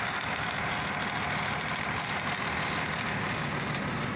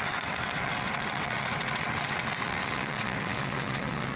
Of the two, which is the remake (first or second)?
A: second